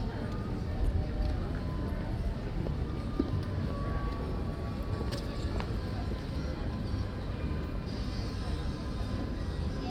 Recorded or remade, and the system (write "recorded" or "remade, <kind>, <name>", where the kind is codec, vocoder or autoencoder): recorded